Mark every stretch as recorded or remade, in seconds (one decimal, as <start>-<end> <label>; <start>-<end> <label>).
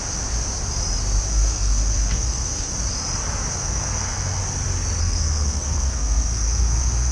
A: 0.0-1.3 recorded; 1.3-2.7 remade; 2.7-3.5 recorded; 3.5-4.4 remade; 4.4-5.0 recorded; 5.0-7.1 remade